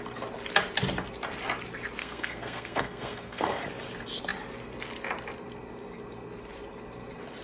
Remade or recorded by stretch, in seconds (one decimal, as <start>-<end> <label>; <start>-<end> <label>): 0.0-2.0 recorded; 2.0-3.6 remade; 3.6-7.4 recorded